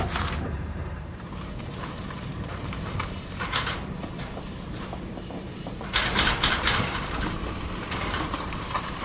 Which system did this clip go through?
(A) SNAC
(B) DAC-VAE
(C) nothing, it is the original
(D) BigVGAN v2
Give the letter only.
D